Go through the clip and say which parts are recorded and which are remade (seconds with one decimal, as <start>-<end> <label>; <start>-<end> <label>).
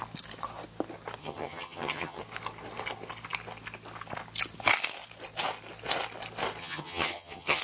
0.0-1.2 recorded; 1.2-2.2 remade; 2.2-6.6 recorded; 6.6-7.6 remade